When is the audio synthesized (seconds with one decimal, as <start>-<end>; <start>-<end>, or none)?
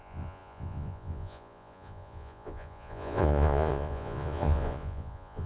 0.0-5.5